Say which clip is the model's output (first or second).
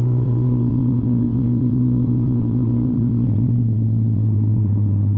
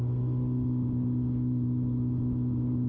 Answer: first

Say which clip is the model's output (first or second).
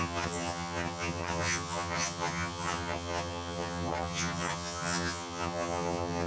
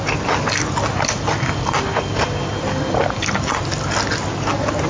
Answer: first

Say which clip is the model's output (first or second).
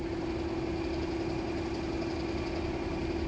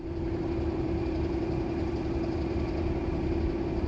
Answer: second